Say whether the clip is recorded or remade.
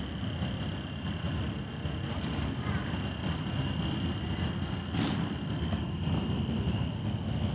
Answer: recorded